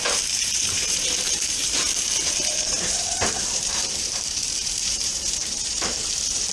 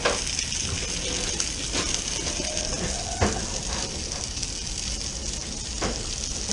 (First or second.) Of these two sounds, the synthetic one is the first